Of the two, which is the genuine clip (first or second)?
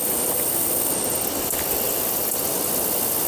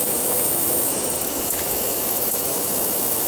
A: first